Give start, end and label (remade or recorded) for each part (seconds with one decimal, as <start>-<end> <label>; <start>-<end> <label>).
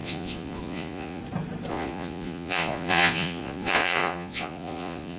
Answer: 0.0-1.2 remade; 1.2-1.7 recorded; 1.7-5.2 remade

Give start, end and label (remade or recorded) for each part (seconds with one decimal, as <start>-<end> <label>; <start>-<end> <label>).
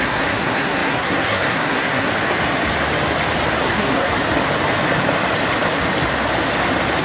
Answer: 0.0-2.1 remade; 2.1-3.6 recorded; 3.6-4.1 remade; 4.1-7.0 recorded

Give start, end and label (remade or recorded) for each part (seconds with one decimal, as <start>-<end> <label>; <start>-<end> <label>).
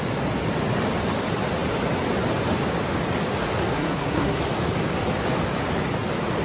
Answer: 0.0-3.7 recorded; 3.7-4.4 remade; 4.4-6.4 recorded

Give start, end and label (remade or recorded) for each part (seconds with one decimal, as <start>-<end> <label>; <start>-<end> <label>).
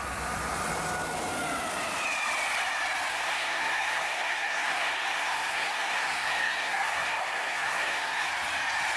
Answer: 0.0-3.1 recorded; 3.1-8.3 remade; 8.3-9.0 recorded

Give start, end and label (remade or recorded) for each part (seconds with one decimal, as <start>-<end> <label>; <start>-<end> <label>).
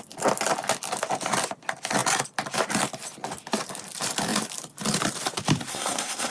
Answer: 0.0-5.7 recorded; 5.7-6.3 remade